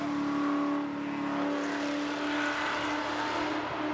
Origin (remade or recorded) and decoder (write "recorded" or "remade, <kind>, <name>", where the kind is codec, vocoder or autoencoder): recorded